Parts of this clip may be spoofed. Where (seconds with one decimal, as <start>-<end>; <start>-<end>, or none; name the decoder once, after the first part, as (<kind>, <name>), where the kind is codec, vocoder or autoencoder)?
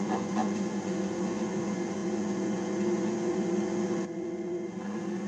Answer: 0.0-5.3 (vocoder, Vocos)